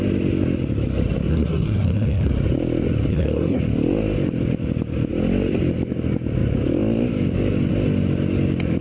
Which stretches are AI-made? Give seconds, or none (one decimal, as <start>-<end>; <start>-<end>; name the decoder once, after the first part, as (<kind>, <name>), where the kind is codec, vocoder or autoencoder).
1.3-2.3 (codec, SNAC); 3.1-3.6